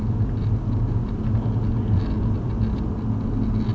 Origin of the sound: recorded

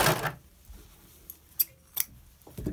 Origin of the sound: recorded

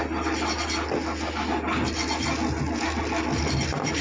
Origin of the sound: recorded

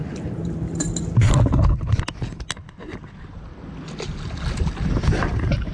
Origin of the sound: recorded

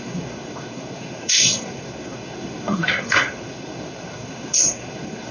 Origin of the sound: remade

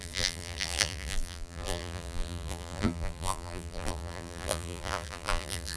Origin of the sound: remade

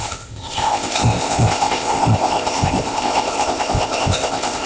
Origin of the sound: remade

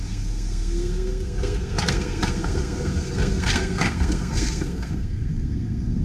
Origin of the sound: remade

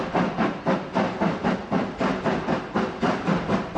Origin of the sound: recorded